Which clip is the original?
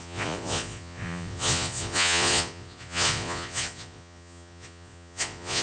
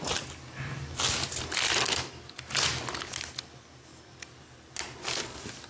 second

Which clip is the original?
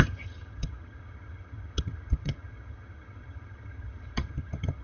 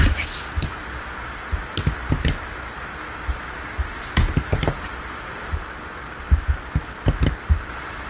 second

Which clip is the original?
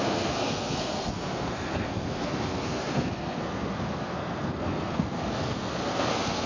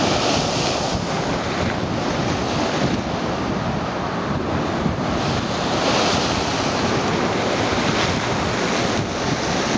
second